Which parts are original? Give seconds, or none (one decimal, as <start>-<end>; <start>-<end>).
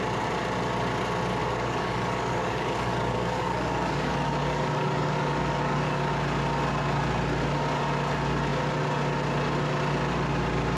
0.0-1.4; 6.1-10.8